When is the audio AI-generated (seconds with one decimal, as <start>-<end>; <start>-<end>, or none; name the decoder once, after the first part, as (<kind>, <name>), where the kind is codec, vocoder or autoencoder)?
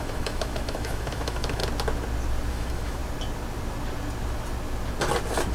0.0-1.6 (autoencoder, DAC-VAE); 2.5-3.0